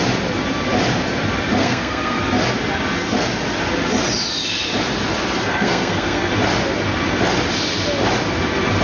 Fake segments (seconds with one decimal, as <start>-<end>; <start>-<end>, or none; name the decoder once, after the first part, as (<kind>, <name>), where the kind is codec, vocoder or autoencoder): 1.6-2.2 (codec, SNAC); 5.5-6.3